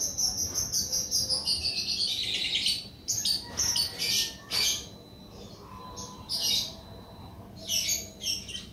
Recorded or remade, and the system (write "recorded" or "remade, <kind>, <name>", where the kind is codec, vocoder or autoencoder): recorded